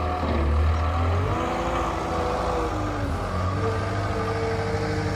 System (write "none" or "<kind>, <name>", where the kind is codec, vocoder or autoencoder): none